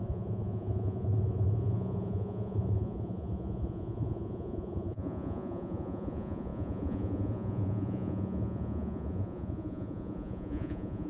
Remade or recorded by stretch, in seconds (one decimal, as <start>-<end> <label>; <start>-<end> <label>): 0.0-11.1 remade